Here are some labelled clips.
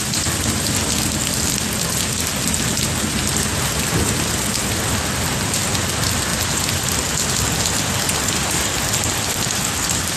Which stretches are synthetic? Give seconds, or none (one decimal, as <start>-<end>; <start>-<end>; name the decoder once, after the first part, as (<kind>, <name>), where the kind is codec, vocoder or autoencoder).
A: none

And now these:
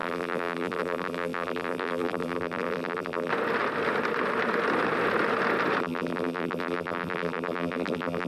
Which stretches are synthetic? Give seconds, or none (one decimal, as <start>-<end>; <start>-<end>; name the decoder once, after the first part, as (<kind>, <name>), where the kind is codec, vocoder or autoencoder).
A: 0.0-3.3 (vocoder, BigVGAN v2); 5.8-8.3

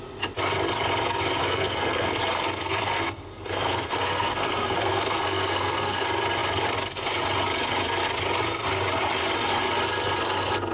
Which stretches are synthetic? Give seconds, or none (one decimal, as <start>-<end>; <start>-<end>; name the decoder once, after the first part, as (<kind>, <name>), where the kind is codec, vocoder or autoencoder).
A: 1.4-6.0 (codec, SNAC)

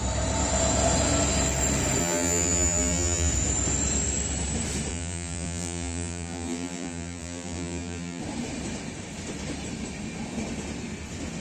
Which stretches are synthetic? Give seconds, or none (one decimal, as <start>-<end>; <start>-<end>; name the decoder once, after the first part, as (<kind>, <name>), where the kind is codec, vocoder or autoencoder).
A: 2.0-3.3 (vocoder, BigVGAN v2); 4.9-8.2

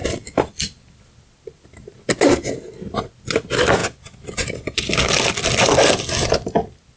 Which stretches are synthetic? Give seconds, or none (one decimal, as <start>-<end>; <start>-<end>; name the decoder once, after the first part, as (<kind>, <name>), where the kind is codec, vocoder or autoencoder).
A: 0.0-2.1 (vocoder, BigVGAN v2); 3.8-7.0

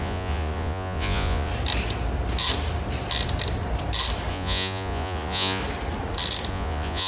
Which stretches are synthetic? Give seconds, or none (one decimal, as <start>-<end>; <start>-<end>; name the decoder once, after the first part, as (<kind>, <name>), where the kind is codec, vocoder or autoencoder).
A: 0.0-1.5 (vocoder, Vocos); 4.3-5.6; 6.5-7.1

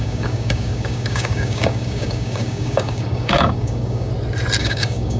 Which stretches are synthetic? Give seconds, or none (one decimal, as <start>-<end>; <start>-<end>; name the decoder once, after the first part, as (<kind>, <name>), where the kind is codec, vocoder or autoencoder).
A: 0.0-4.1 (codec, DAC); 4.6-5.2

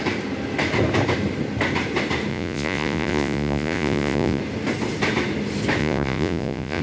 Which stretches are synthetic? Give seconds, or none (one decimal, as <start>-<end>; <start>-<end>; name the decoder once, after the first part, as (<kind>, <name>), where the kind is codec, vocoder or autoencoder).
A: 2.3-4.4 (vocoder, Vocos); 5.8-6.8